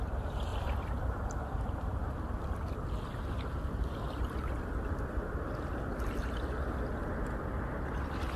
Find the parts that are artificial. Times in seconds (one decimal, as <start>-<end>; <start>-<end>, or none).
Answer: 0.0-0.5; 1.0-2.0; 7.0-8.4